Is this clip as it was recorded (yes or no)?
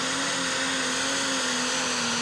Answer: yes